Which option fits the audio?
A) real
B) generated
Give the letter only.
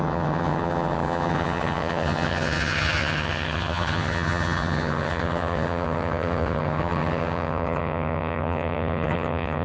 B